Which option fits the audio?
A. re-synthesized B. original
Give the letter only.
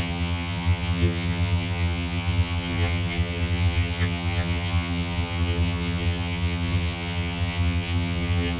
A